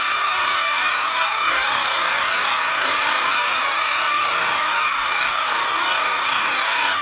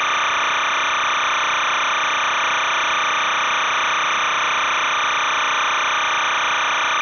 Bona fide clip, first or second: second